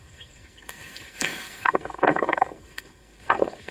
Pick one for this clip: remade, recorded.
remade